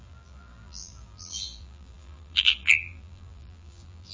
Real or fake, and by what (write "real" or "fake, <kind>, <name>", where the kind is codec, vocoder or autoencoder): fake, vocoder, BigVGAN v2